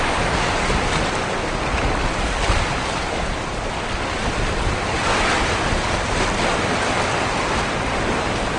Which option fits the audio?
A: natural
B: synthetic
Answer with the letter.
A